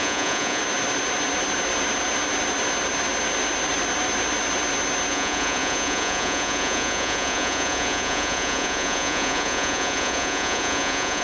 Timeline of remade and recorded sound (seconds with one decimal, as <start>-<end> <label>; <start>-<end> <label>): 0.0-0.6 remade; 0.6-5.1 recorded; 5.1-11.2 remade